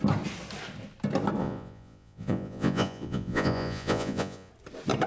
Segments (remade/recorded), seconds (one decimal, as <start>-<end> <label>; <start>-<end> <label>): 0.0-1.4 recorded; 1.4-4.5 remade; 4.5-5.1 recorded